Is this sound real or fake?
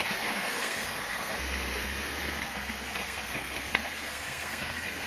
fake